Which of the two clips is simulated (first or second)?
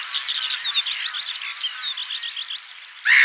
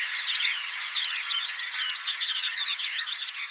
second